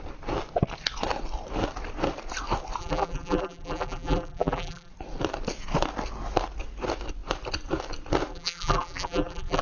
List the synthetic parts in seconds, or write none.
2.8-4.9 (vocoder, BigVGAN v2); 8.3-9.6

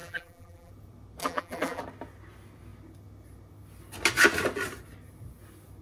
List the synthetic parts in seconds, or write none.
0.0-0.7 (vocoder, BigVGAN v2); 1.2-1.8

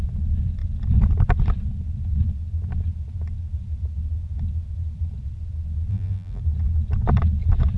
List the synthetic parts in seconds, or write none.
5.9-6.4 (vocoder, BigVGAN v2)

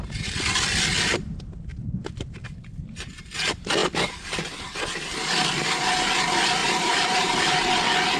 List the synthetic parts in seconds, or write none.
1.7-2.4 (vocoder, BigVGAN v2); 6.6-7.7

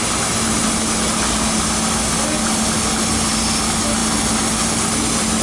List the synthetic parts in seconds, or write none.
none

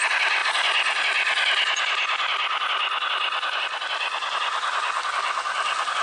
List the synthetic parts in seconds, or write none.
none